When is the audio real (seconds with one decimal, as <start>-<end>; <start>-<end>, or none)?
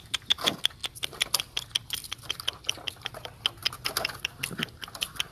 0.0-5.3